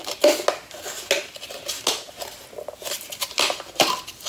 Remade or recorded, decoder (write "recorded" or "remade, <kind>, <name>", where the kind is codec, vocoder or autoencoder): recorded